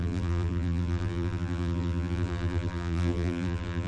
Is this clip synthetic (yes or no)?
yes